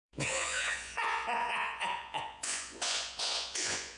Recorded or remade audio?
remade